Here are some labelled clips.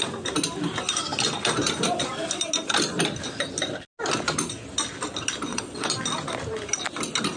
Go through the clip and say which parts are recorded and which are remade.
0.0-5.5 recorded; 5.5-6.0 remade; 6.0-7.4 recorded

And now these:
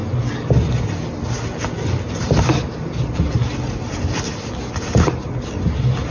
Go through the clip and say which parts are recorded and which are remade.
0.0-6.1 recorded

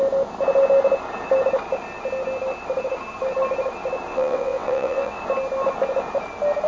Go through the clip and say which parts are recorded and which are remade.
0.0-4.1 recorded; 4.1-5.2 remade; 5.2-6.7 recorded

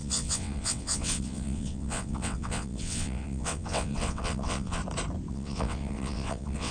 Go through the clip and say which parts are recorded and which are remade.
0.0-4.8 remade; 4.8-5.3 recorded; 5.3-6.7 remade

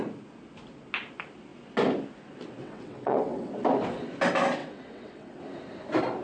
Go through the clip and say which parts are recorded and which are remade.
0.0-2.6 recorded; 2.6-3.5 remade; 3.5-4.6 recorded; 4.6-5.4 remade; 5.4-6.2 recorded

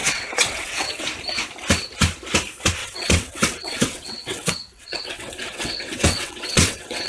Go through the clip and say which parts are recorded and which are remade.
0.0-1.0 remade; 1.0-2.8 recorded; 2.8-7.1 remade

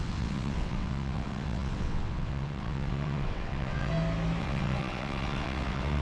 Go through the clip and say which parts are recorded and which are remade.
0.0-3.9 remade; 3.9-4.4 recorded; 4.4-6.0 remade

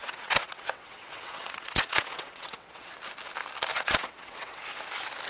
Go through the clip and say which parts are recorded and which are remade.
0.0-2.9 remade; 2.9-3.7 recorded; 3.7-4.6 remade; 4.6-5.3 recorded